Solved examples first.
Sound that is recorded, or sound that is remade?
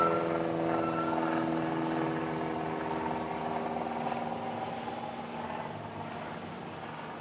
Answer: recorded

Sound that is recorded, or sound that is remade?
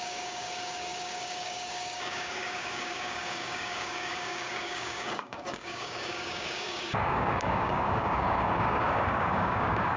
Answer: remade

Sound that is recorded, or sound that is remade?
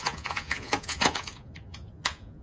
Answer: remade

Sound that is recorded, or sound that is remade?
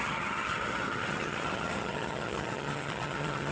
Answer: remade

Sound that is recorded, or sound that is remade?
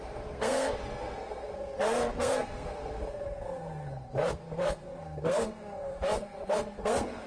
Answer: remade